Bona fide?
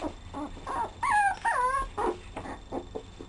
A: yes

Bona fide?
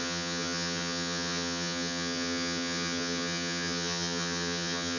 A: no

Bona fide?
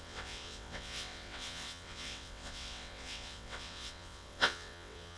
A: no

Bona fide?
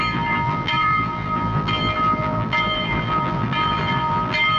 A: no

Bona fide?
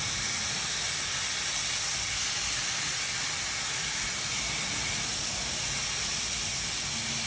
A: yes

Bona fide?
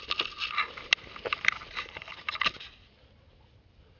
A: yes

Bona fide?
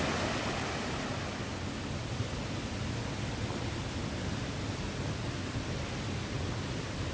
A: yes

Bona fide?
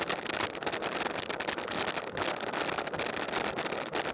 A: yes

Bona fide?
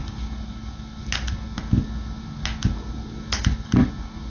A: yes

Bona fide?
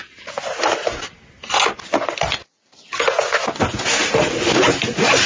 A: yes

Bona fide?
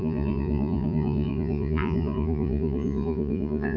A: no